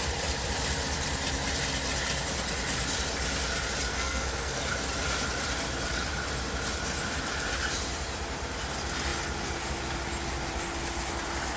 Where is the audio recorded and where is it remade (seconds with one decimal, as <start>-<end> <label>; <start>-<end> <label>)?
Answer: 0.0-3.9 recorded; 3.9-4.6 remade; 4.6-11.6 recorded